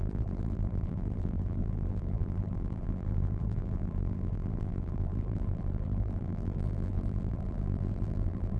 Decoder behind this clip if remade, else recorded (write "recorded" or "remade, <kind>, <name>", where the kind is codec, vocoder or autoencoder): remade, vocoder, BigVGAN v2